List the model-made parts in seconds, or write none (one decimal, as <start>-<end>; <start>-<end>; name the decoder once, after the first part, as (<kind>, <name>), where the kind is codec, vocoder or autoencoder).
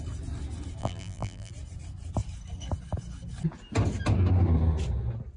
0.8-1.5 (vocoder, BigVGAN v2)